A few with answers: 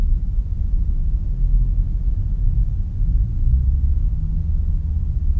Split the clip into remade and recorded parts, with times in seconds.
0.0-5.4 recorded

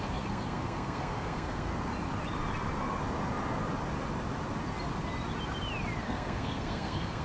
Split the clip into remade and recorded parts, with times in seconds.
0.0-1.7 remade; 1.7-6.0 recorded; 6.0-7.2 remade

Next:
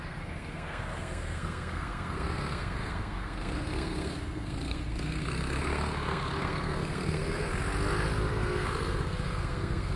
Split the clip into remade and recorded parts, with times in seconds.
0.0-7.5 remade; 7.5-8.3 recorded; 8.3-10.0 remade

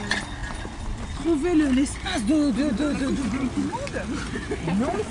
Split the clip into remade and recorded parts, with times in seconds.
0.0-3.9 recorded; 3.9-4.6 remade; 4.6-5.1 recorded

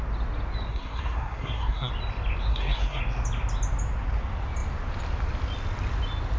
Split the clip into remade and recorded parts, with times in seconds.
0.0-0.7 recorded; 0.7-1.9 remade; 1.9-2.5 recorded; 2.5-3.0 remade; 3.0-6.4 recorded